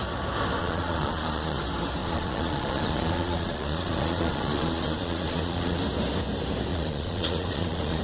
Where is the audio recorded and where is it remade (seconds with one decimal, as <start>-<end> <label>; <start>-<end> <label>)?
0.0-0.6 recorded; 0.6-1.6 remade; 1.6-2.0 recorded; 2.0-5.8 remade; 5.8-6.7 recorded; 6.7-8.0 remade